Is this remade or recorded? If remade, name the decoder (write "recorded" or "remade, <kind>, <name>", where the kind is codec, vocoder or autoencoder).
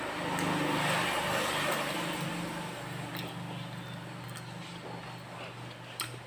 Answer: recorded